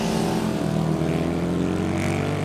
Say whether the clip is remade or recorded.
recorded